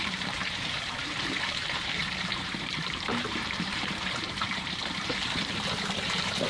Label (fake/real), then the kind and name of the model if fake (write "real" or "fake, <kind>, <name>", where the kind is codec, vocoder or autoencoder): fake, vocoder, BigVGAN v2